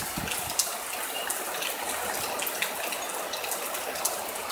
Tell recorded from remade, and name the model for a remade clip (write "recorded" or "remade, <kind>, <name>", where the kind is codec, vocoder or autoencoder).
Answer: recorded